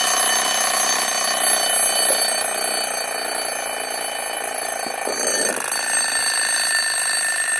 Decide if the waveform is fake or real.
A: real